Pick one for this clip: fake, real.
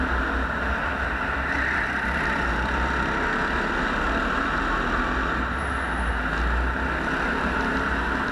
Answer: real